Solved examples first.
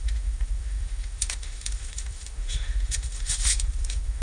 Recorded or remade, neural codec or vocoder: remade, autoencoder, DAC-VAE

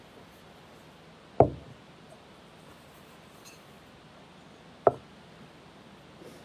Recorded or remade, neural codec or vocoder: recorded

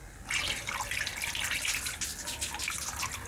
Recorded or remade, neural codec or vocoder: recorded